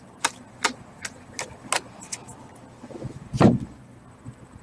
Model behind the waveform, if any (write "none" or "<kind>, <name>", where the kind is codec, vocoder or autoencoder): none